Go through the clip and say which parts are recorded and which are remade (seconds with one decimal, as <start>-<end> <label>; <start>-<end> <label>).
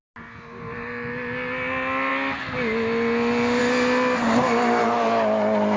0.0-5.8 recorded